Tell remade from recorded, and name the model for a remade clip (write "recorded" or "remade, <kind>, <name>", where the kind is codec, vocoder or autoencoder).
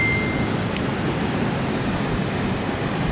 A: recorded